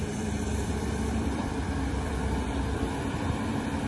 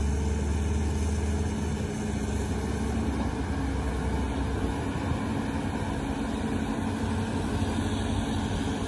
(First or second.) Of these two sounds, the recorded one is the second